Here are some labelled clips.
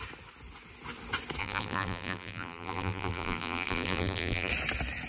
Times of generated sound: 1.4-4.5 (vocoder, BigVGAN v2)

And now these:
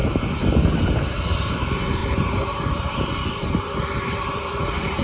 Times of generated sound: 0.6-5.0 (vocoder, BigVGAN v2)